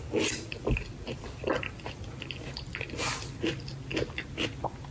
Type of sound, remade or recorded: recorded